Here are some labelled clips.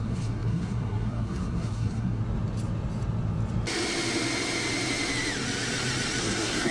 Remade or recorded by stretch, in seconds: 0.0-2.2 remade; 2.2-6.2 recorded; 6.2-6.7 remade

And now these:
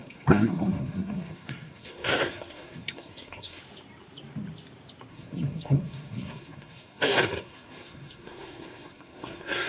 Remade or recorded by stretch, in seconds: 0.0-3.6 remade; 3.6-5.1 recorded; 5.1-9.7 remade

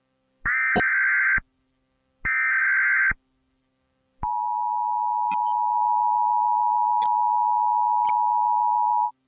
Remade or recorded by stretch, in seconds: 0.0-9.3 recorded

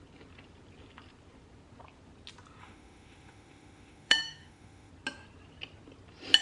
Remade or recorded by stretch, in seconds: 0.0-2.6 recorded; 2.6-4.9 remade; 4.9-6.4 recorded

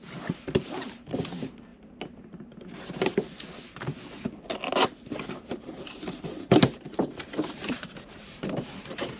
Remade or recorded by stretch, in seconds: 0.0-1.7 remade; 1.7-5.3 recorded; 5.3-9.2 remade

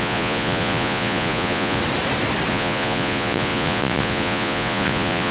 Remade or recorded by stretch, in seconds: 0.0-1.8 remade; 1.8-2.5 recorded; 2.5-5.3 remade